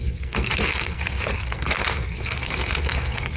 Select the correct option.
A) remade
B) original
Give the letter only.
A